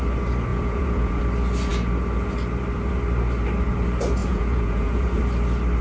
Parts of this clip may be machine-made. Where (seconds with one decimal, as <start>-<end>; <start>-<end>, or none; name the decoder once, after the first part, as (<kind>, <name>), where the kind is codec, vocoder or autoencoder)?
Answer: 0.5-1.2 (vocoder, Vocos); 4.2-5.2